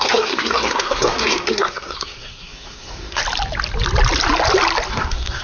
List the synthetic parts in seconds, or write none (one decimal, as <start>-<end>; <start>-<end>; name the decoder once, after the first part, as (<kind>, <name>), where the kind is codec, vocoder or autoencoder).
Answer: 0.0-3.2 (codec, SNAC); 4.9-5.4